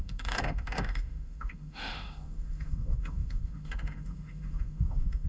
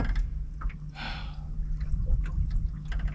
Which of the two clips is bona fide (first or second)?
second